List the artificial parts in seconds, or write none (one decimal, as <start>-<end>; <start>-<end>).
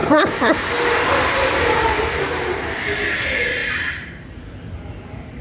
0.0-2.8; 3.6-4.5